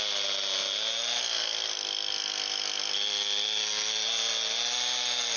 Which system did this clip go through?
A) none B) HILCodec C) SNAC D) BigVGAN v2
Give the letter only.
A